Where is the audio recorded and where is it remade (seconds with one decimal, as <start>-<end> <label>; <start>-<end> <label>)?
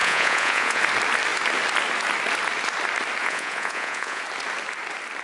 0.0-0.8 remade; 0.8-3.2 recorded; 3.2-4.2 remade; 4.2-5.2 recorded